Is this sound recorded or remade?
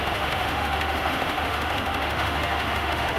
remade